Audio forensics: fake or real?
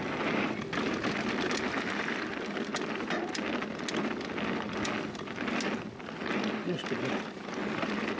real